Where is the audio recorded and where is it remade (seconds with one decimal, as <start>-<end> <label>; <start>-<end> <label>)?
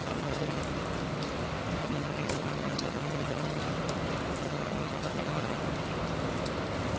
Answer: 0.0-0.6 remade; 0.6-1.8 recorded; 1.8-3.6 remade; 3.6-4.4 recorded; 4.4-5.6 remade; 5.6-7.0 recorded